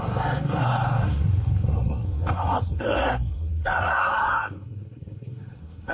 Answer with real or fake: fake